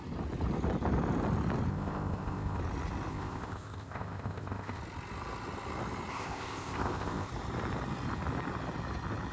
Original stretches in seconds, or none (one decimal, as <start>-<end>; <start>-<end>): 0.0-1.7; 2.6-3.1; 4.8-6.1; 7.3-9.3